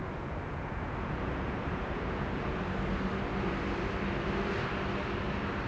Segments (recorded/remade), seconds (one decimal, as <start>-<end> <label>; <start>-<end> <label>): 0.0-2.6 remade; 2.6-5.7 recorded